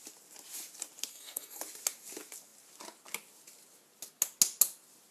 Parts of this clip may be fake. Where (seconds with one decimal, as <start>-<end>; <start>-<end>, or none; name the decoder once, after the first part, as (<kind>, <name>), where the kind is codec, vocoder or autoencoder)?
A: 1.1-1.6 (codec, SNAC)